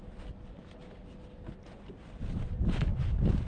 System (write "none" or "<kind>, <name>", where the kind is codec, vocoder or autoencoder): none